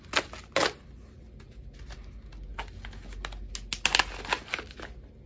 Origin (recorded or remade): recorded